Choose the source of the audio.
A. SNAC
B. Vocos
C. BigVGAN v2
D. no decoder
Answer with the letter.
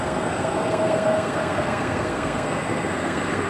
A